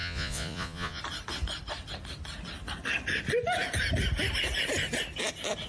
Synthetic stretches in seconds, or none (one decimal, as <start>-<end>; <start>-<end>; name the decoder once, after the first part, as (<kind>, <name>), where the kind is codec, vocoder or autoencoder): 0.0-1.0 (vocoder, Vocos)